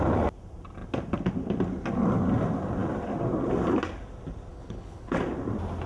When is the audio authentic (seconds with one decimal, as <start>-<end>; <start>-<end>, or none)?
0.0-4.5; 5.1-5.9

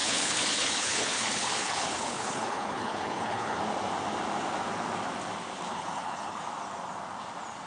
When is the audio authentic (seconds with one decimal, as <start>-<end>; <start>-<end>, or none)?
3.6-5.7; 6.4-7.7

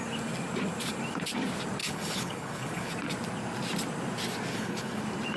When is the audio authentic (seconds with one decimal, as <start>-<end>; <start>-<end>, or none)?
0.0-1.8; 2.9-4.5; 5.0-5.4

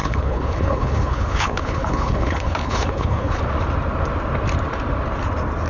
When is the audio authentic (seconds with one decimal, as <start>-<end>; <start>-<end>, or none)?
3.4-5.7

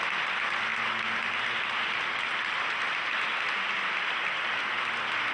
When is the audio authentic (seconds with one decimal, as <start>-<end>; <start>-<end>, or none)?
0.0-5.3